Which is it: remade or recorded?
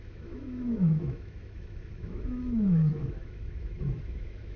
remade